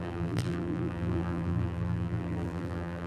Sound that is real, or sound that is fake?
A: fake